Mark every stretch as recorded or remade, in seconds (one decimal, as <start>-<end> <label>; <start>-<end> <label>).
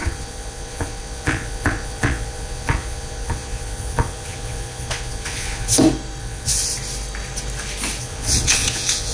0.0-5.7 remade; 5.7-6.2 recorded; 6.2-6.7 remade; 6.7-8.0 recorded; 8.0-9.1 remade